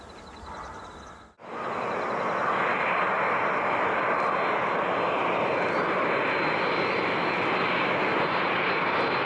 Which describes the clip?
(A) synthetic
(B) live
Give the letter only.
B